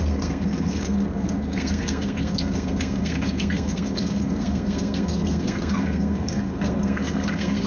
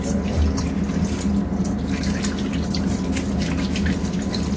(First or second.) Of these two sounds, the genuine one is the second